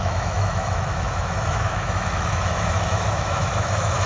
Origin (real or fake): fake